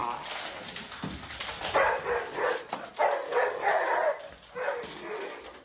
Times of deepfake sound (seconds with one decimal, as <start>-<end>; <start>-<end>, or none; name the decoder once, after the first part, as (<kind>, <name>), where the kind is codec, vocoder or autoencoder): none